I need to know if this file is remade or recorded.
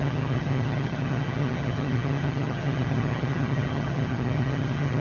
remade